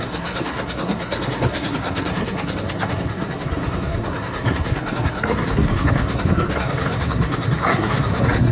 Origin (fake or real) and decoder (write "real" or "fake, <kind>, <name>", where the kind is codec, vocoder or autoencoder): fake, codec, SNAC